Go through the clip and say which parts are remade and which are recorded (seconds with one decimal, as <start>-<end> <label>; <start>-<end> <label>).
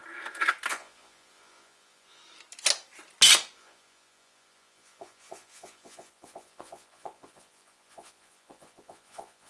0.0-0.7 recorded; 0.7-2.2 remade; 2.2-3.6 recorded; 3.6-9.5 remade